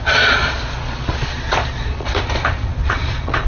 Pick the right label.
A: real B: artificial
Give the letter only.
B